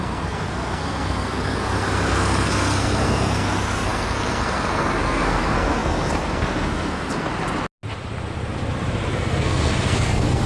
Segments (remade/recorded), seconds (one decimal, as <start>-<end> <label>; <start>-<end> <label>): 0.0-7.3 remade; 7.3-9.1 recorded; 9.1-10.5 remade